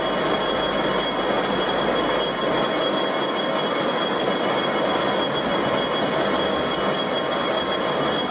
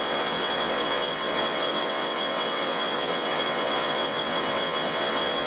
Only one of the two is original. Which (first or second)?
first